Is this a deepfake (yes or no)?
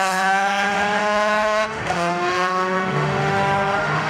yes